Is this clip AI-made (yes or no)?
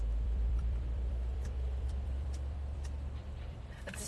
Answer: yes